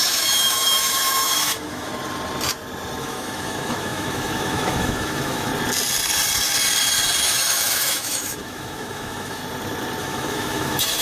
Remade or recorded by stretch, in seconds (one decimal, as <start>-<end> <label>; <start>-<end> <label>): 0.0-1.9 remade; 1.9-3.0 recorded; 3.0-5.5 remade; 5.5-7.2 recorded; 7.2-9.4 remade; 9.4-10.0 recorded; 10.0-11.0 remade